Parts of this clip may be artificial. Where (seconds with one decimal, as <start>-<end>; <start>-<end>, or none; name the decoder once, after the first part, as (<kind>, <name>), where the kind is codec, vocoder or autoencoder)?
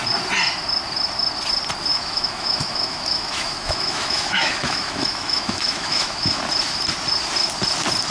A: 1.9-6.4 (autoencoder, DAC-VAE)